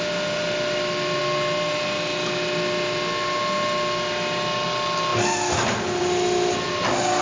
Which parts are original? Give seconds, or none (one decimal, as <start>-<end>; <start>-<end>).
0.0-7.2